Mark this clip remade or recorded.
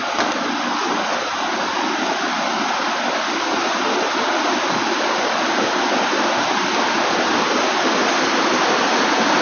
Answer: recorded